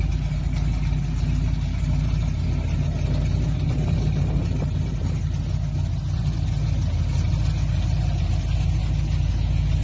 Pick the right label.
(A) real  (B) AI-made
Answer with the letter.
A